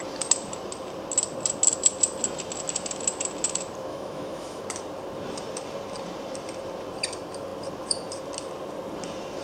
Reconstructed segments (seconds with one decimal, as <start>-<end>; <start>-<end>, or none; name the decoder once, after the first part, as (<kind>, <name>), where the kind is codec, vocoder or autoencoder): 3.9-4.6 (autoencoder, DAC-VAE)